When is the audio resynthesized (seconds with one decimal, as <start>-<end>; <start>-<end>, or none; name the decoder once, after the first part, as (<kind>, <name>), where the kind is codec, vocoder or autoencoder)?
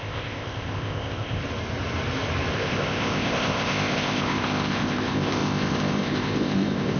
0.0-1.4 (codec, ZipCodec); 2.5-7.0